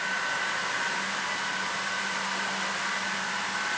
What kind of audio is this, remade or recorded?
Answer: recorded